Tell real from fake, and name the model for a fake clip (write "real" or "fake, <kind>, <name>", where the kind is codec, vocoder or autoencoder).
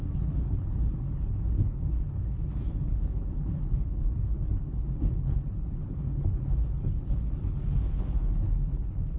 fake, codec, HILCodec